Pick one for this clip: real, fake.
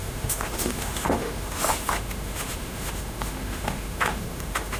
fake